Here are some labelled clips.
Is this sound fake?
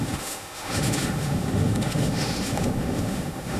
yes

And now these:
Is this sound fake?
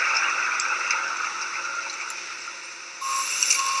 no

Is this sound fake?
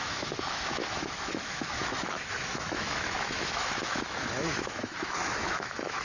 yes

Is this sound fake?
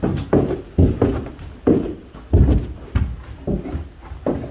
no